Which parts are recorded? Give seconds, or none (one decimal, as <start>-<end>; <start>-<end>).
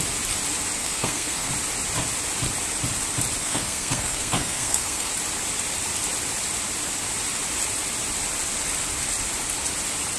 0.0-0.8; 1.5-3.4; 5.1-10.2